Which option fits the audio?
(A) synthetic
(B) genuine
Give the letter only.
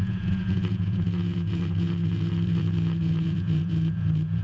A